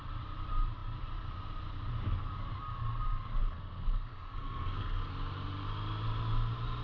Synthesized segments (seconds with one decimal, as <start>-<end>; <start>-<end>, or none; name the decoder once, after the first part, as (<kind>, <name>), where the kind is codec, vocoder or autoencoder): 3.4-5.1 (codec, SNAC)

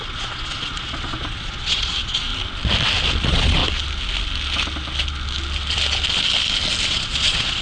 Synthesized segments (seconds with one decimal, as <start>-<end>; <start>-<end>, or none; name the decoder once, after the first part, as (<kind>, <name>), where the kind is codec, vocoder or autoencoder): 0.0-2.3 (vocoder, Vocos); 3.2-3.6; 6.9-7.6

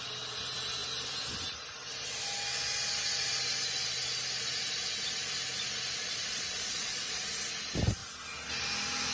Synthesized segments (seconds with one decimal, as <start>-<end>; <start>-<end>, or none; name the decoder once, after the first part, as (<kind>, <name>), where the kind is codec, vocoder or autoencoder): 6.0-7.2 (vocoder, Vocos)

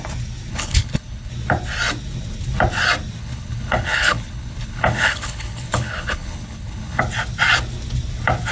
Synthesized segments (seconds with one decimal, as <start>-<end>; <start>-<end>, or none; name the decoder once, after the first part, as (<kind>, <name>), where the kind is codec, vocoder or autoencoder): 0.5-1.3 (codec, HILCodec); 3.2-7.0